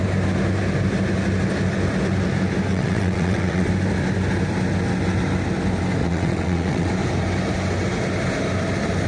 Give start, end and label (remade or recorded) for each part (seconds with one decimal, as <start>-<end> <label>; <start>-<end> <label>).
0.0-2.7 recorded; 2.7-3.7 remade; 3.7-6.0 recorded; 6.0-6.9 remade; 6.9-9.1 recorded